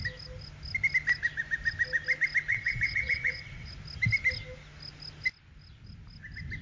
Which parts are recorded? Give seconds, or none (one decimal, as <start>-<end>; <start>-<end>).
0.0-2.5; 3.7-6.6